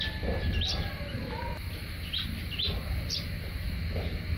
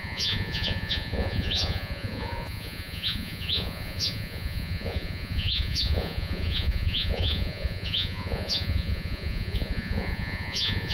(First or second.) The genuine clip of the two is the first